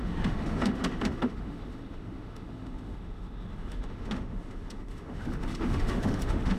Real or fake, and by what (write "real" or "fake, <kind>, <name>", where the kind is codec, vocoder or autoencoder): fake, autoencoder, DAC-VAE